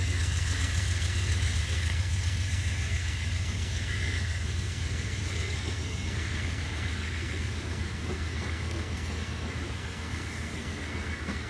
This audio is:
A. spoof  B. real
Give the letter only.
A